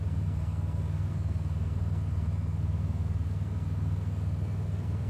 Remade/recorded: remade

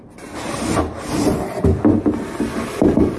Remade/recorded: recorded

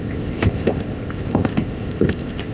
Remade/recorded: remade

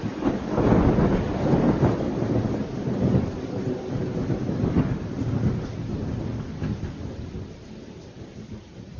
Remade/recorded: recorded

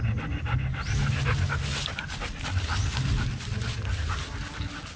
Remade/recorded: recorded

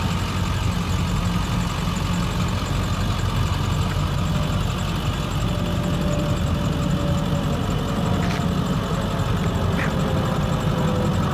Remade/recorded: recorded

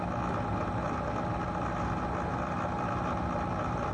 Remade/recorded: recorded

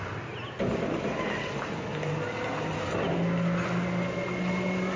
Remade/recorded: recorded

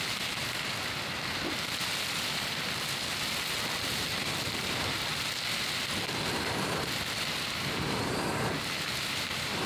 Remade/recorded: remade